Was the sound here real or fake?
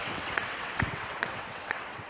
fake